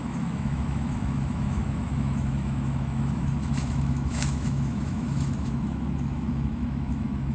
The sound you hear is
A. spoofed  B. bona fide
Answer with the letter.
A